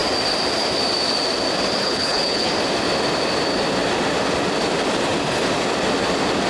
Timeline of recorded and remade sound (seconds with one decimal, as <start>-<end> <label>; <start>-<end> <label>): 0.0-1.8 recorded; 1.8-2.5 remade; 2.5-6.5 recorded